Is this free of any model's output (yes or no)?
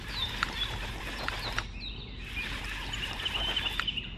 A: yes